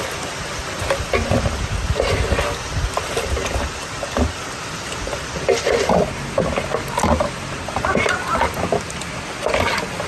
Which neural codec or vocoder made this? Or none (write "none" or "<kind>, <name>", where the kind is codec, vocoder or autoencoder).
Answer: none